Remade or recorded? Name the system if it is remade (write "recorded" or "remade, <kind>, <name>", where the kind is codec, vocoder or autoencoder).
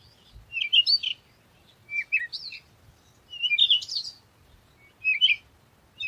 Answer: recorded